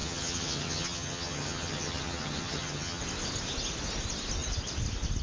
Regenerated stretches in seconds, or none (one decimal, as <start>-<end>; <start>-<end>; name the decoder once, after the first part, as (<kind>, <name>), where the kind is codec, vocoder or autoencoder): 0.0-3.0 (vocoder, HiFi-GAN)